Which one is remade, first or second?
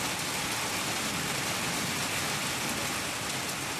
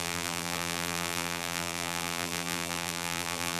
second